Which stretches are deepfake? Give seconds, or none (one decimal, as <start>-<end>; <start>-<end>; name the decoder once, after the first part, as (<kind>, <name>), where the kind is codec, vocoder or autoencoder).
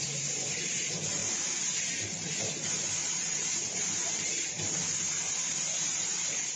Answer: 0.0-1.2 (vocoder, BigVGAN v2); 1.8-6.6